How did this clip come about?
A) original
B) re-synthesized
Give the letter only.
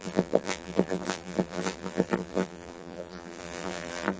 B